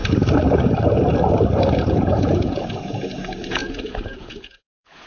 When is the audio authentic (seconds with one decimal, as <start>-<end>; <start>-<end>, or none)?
0.0-1.8